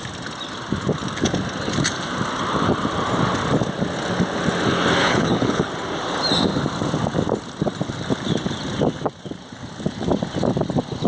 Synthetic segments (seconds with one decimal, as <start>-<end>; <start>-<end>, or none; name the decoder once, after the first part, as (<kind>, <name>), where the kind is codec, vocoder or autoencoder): 5.0-5.7 (codec, HILCodec)